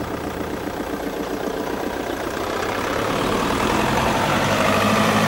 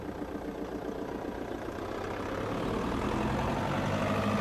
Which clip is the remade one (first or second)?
first